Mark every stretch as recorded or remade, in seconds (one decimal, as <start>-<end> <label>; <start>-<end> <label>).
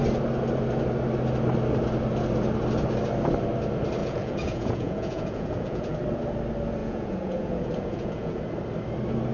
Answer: 0.0-4.0 recorded; 4.0-5.9 remade; 5.9-6.8 recorded; 6.8-8.4 remade; 8.4-9.3 recorded